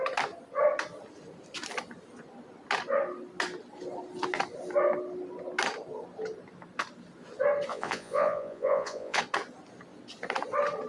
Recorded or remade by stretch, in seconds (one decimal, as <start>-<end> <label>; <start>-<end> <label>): 0.0-7.7 recorded; 7.7-9.2 remade; 9.2-10.9 recorded